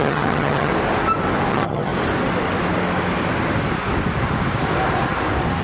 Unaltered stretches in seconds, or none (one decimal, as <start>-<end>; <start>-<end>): 0.7-1.5; 1.9-5.6

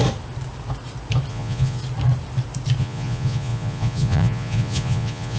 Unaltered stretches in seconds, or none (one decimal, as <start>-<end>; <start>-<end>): 0.0-1.3; 1.8-2.8

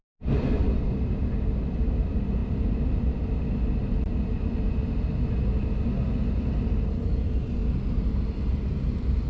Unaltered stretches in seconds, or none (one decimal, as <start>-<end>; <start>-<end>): 0.0-9.3

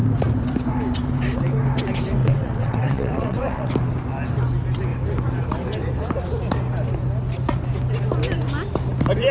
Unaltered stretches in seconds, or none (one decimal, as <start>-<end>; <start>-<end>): 0.0-2.2; 3.7-9.3

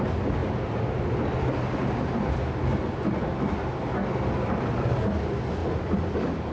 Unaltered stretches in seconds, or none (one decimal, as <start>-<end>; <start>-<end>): 0.0-6.5

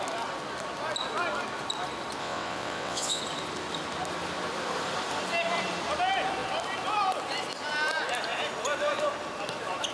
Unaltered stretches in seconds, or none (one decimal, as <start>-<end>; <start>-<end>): 0.0-2.2; 3.2-9.9